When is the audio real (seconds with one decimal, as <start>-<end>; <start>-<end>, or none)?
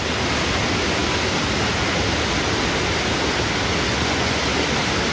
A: 0.0-3.9; 4.4-5.1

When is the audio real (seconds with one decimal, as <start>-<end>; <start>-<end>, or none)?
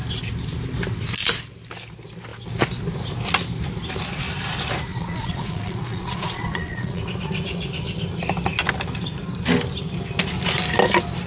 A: 0.0-4.9; 7.0-11.3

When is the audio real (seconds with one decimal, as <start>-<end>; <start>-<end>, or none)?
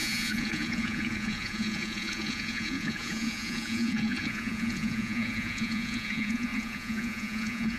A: none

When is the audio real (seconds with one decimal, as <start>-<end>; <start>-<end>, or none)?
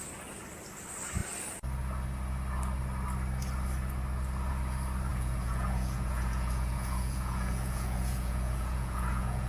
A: 0.0-5.1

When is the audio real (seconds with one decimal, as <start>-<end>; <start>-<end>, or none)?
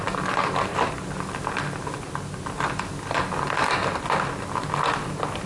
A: 0.0-5.5